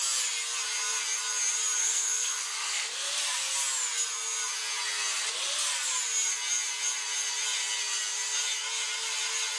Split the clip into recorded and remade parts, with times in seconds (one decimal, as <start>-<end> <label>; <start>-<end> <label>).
0.0-1.8 recorded; 1.8-3.1 remade; 3.1-9.6 recorded